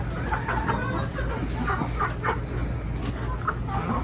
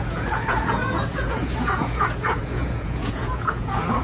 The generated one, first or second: second